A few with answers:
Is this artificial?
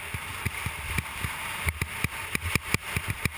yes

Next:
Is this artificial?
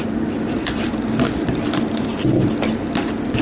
no